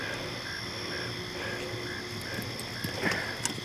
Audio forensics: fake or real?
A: real